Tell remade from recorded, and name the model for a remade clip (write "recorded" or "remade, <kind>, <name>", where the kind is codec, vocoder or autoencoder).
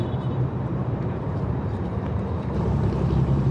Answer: remade, vocoder, BigVGAN v2